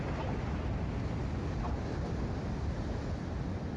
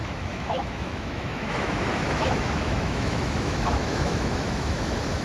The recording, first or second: first